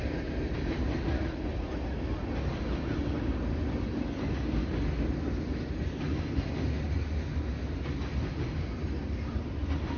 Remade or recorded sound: recorded